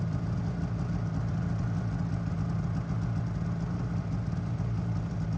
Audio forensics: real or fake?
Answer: real